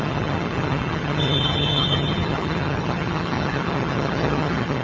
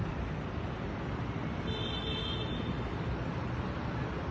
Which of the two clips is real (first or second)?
second